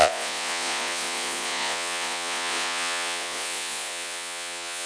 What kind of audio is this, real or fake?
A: fake